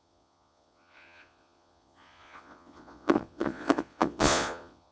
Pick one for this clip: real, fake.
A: fake